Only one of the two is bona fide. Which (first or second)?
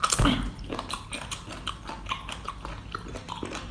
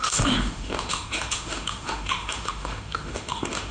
first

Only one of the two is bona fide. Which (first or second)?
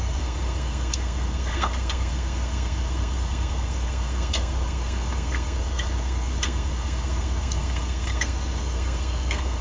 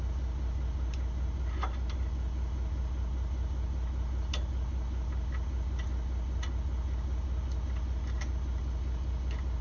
second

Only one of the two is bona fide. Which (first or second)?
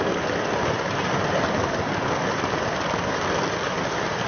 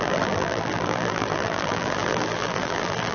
first